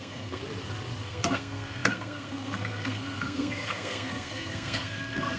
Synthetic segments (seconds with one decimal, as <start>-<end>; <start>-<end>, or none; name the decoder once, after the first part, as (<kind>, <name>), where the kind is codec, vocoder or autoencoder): 0.0-0.4 (codec, SNAC); 1.0-5.4